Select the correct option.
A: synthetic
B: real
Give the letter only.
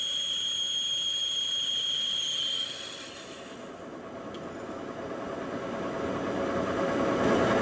B